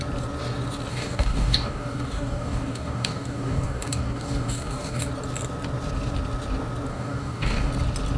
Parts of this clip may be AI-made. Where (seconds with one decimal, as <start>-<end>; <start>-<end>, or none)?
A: 0.9-5.1; 6.9-7.7